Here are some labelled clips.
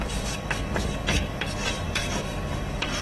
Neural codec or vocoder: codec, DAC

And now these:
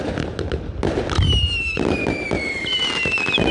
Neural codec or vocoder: none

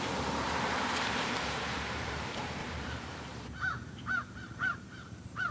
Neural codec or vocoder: vocoder, BigVGAN v2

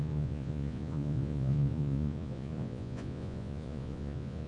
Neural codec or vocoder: vocoder, Vocos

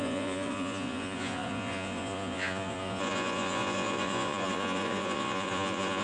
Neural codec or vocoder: vocoder, Vocos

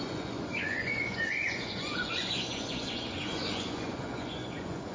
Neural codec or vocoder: vocoder, Vocos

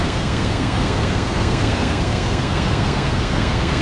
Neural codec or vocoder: codec, SNAC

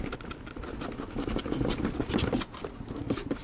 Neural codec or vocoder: none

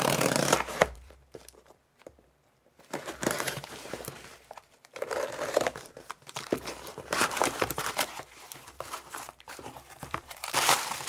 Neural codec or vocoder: vocoder, BigVGAN v2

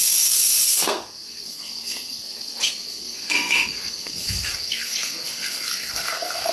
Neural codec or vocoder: codec, SNAC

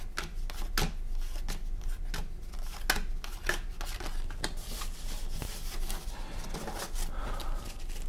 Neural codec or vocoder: none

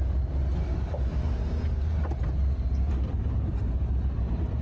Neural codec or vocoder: vocoder, BigVGAN v2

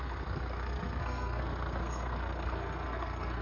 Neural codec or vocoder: codec, SNAC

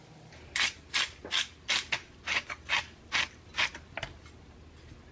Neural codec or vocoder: none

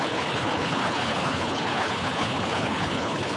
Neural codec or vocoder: codec, HILCodec